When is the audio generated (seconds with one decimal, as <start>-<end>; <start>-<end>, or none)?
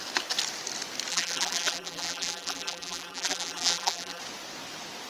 1.1-4.2